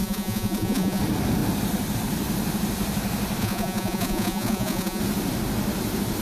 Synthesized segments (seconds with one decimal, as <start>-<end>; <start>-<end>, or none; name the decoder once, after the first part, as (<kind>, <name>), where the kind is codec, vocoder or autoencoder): 0.0-1.0 (vocoder, Vocos); 3.4-5.0